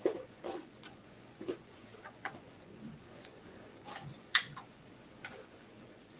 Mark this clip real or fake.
fake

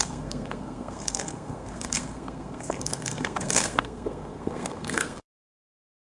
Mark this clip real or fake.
fake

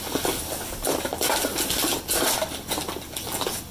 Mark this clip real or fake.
real